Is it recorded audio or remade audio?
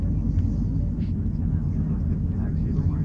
recorded